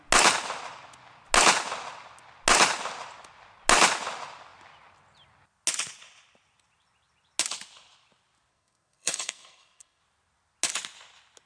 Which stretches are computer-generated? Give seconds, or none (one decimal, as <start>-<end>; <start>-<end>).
8.5-10.0